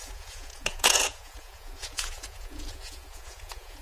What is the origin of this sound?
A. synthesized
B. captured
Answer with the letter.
A